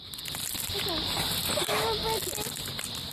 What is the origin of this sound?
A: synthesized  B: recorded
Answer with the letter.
B